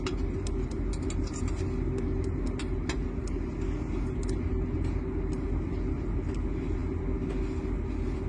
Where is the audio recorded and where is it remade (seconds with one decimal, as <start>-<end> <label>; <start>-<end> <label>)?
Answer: 0.0-8.3 recorded